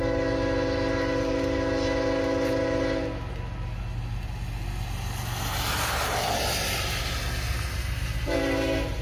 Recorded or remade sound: recorded